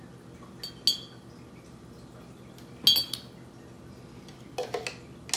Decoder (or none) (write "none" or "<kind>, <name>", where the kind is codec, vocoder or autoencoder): none